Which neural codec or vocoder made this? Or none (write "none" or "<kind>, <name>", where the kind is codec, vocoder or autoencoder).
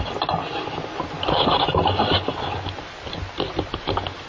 none